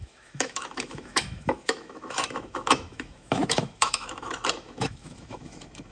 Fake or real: fake